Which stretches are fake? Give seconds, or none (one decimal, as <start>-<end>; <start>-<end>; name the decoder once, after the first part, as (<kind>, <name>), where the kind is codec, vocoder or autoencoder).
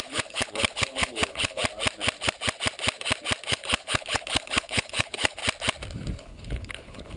0.0-1.6 (codec, HILCodec); 3.5-5.4; 6.2-7.2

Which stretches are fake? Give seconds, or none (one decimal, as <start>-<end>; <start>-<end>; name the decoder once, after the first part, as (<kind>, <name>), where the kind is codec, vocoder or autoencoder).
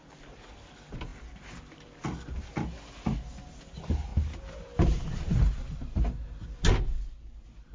none